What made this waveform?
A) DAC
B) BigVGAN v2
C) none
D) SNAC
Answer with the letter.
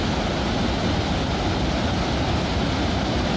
C